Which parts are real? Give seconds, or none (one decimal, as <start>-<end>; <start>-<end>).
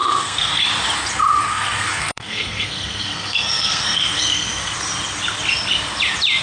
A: 0.6-1.5; 4.7-6.4